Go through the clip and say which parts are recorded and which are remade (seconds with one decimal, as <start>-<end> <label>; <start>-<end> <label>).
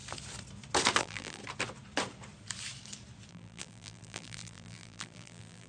0.0-1.0 recorded; 1.0-1.4 remade; 1.4-3.3 recorded; 3.3-5.7 remade